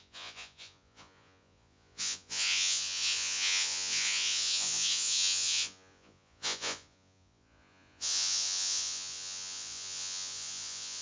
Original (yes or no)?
no